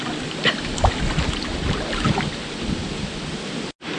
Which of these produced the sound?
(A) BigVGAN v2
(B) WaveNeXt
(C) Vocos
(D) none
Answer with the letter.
D